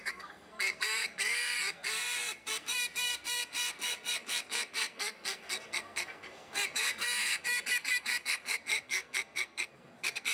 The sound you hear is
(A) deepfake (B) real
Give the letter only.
A